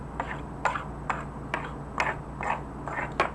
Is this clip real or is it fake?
real